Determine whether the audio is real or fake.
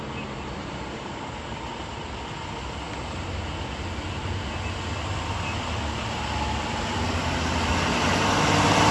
real